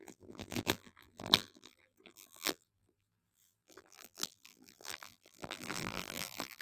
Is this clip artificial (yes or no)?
yes